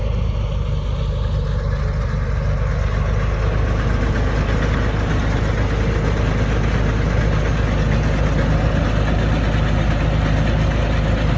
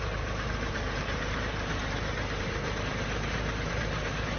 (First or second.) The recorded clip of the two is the first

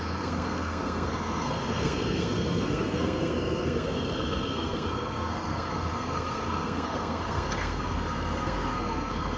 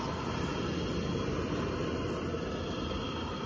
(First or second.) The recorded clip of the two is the second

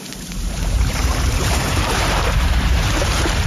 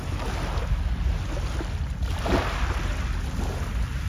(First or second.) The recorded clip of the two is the second